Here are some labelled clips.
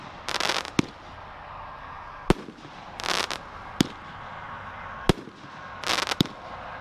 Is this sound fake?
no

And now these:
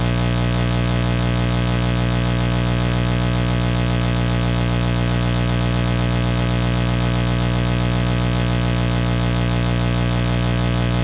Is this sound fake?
no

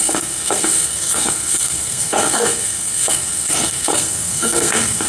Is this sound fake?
yes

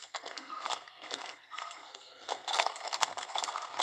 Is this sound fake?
yes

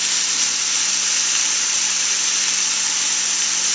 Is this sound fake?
no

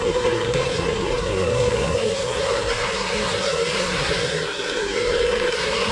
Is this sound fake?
yes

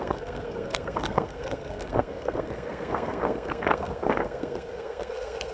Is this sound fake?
yes